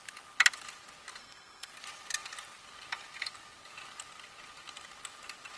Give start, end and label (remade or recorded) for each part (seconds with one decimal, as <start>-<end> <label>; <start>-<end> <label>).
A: 0.0-1.2 recorded; 1.2-1.7 remade; 1.7-5.6 recorded